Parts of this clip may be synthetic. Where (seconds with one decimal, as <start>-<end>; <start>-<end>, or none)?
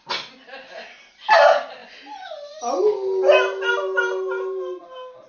none